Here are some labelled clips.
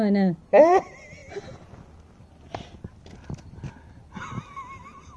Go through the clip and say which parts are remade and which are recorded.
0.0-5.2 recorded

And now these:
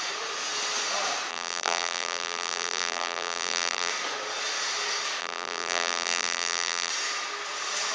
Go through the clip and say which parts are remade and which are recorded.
0.0-1.3 recorded; 1.3-3.9 remade; 3.9-5.2 recorded; 5.2-6.9 remade; 6.9-7.9 recorded

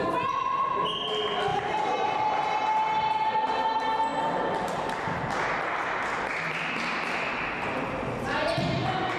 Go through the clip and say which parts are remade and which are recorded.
0.0-1.5 recorded; 1.5-2.3 remade; 2.3-9.2 recorded

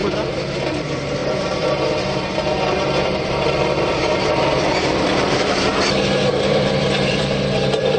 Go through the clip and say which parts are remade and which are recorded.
0.0-0.7 recorded; 0.7-5.7 remade; 5.7-6.4 recorded; 6.4-8.0 remade

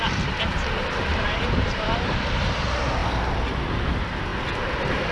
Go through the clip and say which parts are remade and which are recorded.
0.0-1.1 recorded; 1.1-2.4 remade; 2.4-5.1 recorded